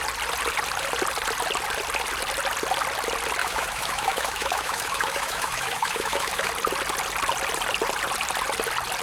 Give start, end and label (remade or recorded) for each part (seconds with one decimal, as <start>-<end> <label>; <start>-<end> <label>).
0.0-3.4 recorded; 3.4-6.5 remade; 6.5-9.0 recorded